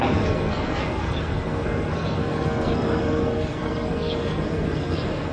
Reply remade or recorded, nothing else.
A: remade